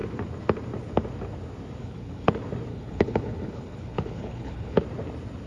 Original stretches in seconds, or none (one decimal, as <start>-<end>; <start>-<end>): 0.0-1.8; 2.3-2.7; 4.8-5.5